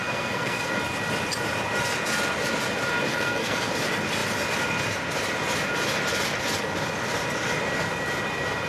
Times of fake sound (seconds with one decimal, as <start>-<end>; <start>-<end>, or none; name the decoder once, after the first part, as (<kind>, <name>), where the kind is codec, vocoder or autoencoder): 0.0-0.7 (codec, SNAC); 3.1-3.7